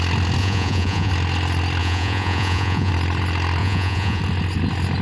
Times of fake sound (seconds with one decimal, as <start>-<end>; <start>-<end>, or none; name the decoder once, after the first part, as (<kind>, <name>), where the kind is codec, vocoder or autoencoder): 0.4-1.1 (vocoder, Vocos); 1.8-2.9; 3.6-4.2